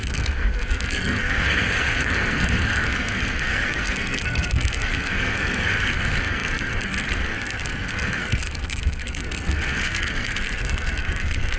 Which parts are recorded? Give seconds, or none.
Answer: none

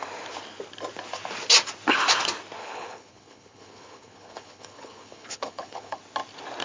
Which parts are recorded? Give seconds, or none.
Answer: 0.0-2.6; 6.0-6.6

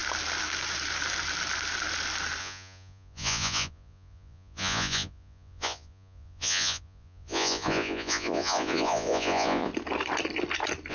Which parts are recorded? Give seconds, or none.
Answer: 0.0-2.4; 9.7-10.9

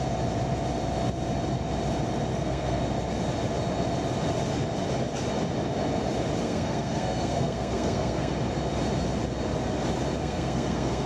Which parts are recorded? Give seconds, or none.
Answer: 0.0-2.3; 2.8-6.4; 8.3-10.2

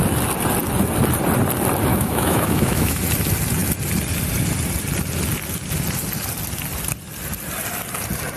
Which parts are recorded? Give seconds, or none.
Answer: 0.0-1.9; 3.0-8.4